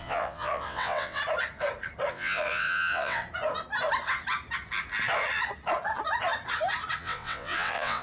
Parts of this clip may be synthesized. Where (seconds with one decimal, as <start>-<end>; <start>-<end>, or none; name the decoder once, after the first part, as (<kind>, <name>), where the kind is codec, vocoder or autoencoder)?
0.0-1.2 (vocoder, WaveNeXt); 2.1-3.2; 7.0-8.0